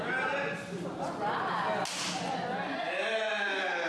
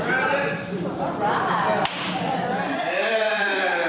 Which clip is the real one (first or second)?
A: first